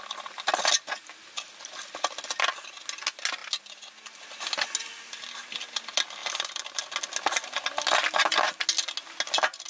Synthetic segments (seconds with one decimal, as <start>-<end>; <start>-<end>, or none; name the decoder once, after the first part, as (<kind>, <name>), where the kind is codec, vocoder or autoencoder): 6.2-6.8 (vocoder, BigVGAN v2)